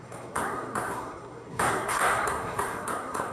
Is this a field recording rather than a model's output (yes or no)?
no